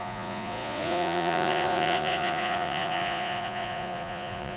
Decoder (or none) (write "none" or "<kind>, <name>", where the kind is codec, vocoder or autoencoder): vocoder, Vocos